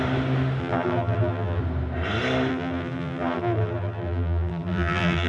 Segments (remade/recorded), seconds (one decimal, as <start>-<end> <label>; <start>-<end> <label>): 0.0-0.6 recorded; 0.6-1.6 remade; 1.6-2.5 recorded; 2.5-5.3 remade